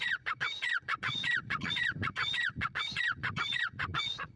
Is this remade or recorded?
remade